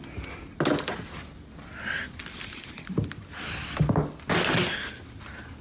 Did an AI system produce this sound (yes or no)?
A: no